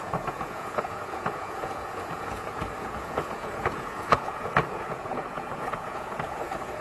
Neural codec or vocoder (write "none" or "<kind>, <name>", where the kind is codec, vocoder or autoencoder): vocoder, Vocos